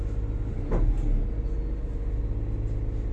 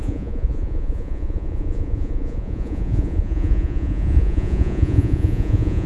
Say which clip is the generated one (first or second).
second